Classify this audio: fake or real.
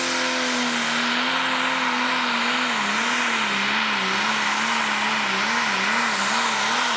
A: real